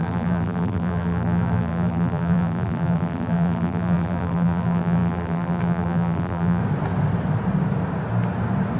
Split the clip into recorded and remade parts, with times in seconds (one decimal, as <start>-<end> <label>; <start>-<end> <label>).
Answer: 0.0-6.6 remade; 6.6-8.8 recorded